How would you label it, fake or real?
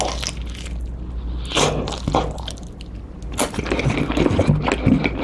real